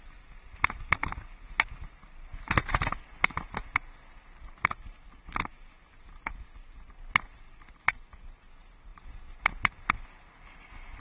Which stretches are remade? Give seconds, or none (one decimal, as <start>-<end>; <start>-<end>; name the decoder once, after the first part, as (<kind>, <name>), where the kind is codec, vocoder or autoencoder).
none